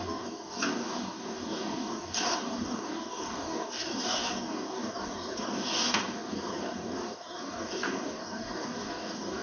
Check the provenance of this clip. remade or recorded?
remade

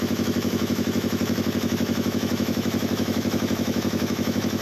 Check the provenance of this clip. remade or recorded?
remade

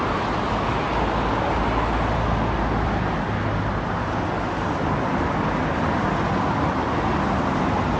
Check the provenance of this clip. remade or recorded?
recorded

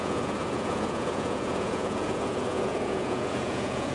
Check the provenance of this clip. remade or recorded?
remade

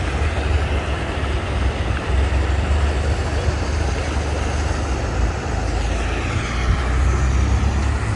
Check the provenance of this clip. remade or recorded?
recorded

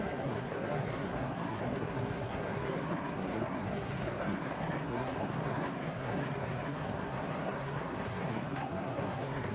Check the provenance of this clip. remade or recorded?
remade